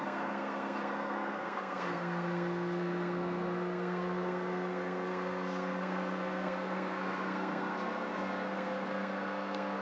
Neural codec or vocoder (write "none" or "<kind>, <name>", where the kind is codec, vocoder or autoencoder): codec, SNAC